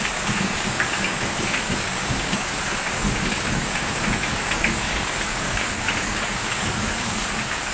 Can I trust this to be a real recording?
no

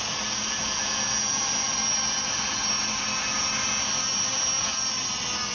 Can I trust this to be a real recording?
yes